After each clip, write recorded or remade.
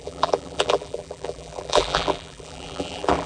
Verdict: remade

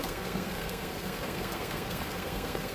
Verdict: remade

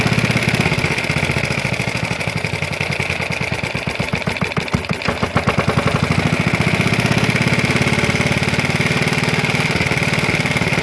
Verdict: recorded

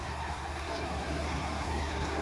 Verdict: remade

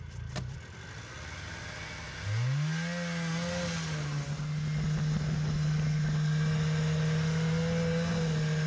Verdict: recorded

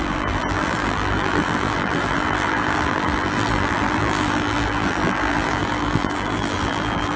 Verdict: remade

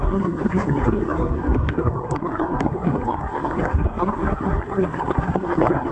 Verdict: remade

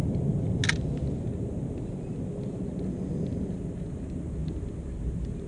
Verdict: recorded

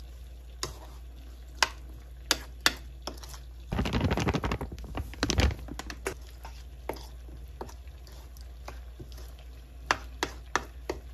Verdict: recorded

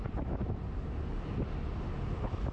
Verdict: recorded